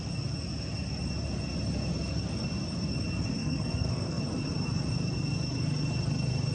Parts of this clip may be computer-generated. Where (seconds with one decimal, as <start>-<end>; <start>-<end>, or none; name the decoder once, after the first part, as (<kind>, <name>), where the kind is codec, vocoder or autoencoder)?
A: 3.4-4.2 (codec, SNAC)